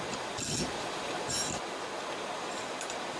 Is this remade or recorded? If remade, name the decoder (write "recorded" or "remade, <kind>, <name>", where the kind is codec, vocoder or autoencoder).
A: recorded